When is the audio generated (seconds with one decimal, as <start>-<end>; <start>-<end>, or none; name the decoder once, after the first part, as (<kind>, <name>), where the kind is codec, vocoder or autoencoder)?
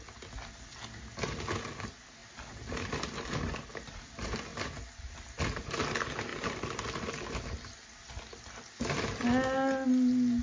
none